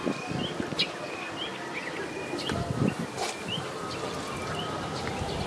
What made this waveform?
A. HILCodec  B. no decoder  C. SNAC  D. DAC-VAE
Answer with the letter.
B